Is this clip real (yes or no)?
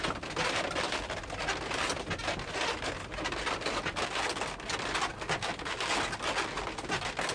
yes